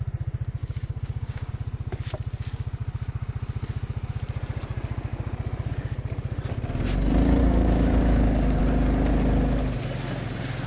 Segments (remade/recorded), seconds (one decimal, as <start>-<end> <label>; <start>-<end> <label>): 0.0-0.6 recorded; 0.6-1.5 remade; 1.5-7.4 recorded; 7.4-8.6 remade; 8.6-10.7 recorded